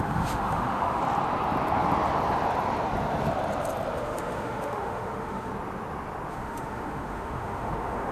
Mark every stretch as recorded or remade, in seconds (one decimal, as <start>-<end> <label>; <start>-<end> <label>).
0.0-1.0 remade; 1.0-4.0 recorded; 4.0-5.5 remade; 5.5-6.3 recorded; 6.3-8.1 remade